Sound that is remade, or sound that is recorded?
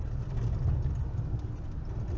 recorded